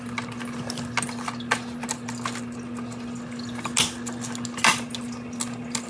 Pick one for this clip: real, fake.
real